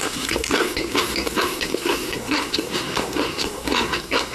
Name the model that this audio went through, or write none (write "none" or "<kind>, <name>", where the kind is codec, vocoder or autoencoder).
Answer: codec, SNAC